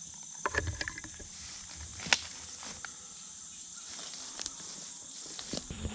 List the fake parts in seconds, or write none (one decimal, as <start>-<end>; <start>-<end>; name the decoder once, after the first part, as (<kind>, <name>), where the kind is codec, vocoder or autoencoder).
none